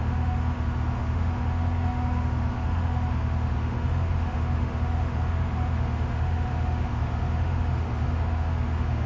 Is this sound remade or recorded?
remade